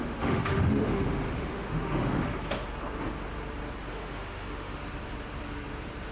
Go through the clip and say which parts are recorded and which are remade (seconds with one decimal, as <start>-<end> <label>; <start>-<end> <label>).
0.0-2.3 remade; 2.3-3.9 recorded; 3.9-4.8 remade; 4.8-6.1 recorded